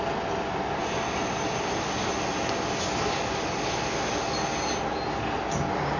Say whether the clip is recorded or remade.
recorded